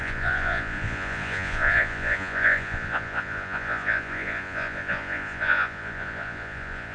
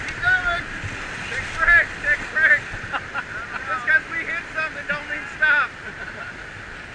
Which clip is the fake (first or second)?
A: first